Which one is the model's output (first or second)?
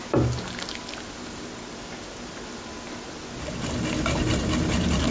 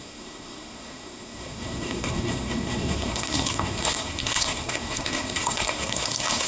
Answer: second